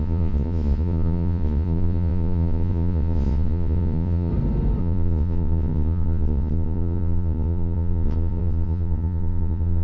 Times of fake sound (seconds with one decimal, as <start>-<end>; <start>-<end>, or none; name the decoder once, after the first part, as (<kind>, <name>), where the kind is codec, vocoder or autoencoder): 0.0-4.3 (vocoder, Vocos); 4.8-9.8